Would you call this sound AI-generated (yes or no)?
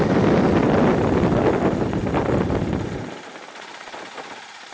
no